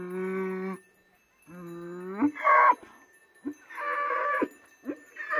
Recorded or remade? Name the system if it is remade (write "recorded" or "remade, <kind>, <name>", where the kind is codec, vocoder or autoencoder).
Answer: recorded